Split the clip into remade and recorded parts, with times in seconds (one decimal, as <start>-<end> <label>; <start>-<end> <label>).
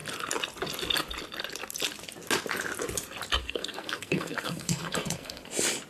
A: 0.0-3.4 recorded; 3.4-5.5 remade; 5.5-5.9 recorded